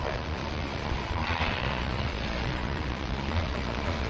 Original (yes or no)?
no